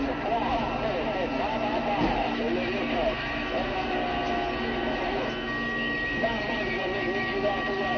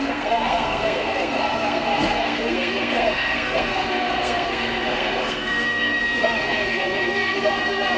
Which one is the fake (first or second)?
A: second